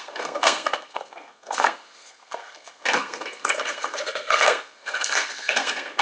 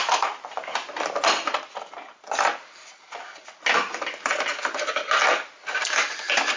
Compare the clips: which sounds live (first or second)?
second